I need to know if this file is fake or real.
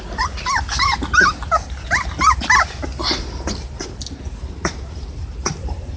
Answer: real